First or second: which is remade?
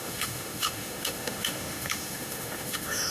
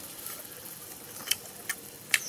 first